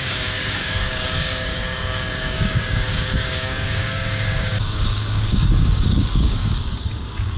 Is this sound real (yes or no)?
no